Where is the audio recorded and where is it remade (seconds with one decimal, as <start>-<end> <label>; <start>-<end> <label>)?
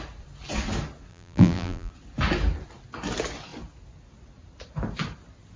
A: 0.0-1.1 recorded; 1.1-1.9 remade; 1.9-5.6 recorded